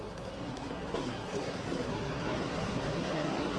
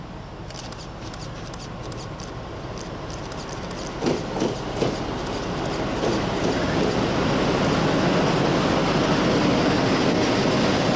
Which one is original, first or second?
second